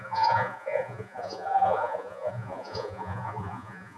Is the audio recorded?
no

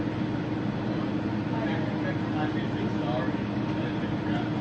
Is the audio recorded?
yes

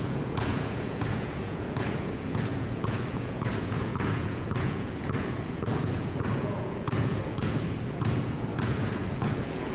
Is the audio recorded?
no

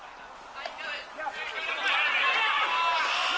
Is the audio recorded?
yes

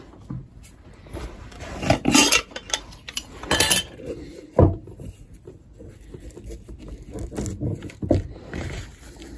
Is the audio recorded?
yes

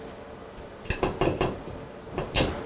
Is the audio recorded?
yes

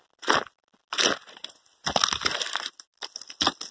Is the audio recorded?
yes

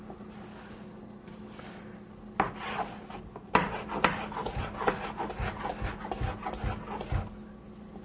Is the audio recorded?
yes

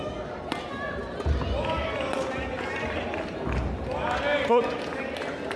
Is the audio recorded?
yes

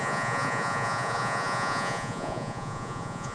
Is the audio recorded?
no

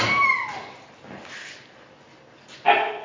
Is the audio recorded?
yes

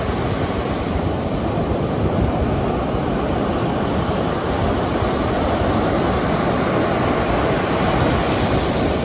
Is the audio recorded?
yes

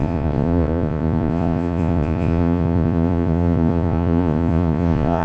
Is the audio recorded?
no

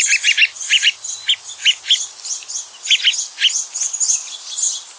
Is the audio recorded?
yes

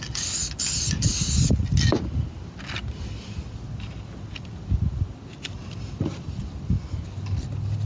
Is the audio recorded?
yes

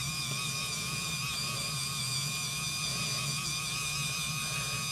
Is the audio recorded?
no